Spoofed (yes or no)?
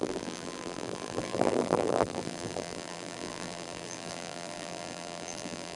yes